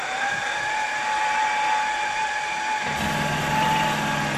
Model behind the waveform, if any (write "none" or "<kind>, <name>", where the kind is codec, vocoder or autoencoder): none